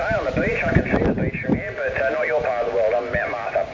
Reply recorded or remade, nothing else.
recorded